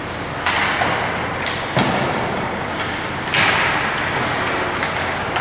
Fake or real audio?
real